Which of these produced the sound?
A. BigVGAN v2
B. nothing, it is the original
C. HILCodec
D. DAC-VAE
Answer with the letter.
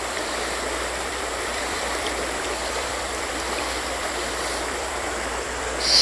A